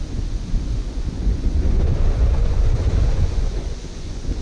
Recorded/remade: remade